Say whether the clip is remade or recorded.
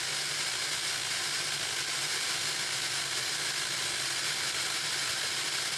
recorded